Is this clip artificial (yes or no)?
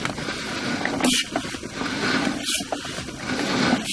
no